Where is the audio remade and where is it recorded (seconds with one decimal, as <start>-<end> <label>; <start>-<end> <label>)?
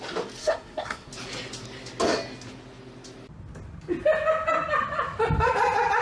0.0-0.4 recorded; 0.4-1.1 remade; 1.1-6.0 recorded